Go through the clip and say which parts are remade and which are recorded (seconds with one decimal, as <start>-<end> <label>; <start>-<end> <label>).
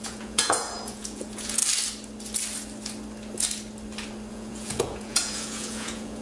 0.0-1.6 remade; 1.6-4.3 recorded; 4.3-6.2 remade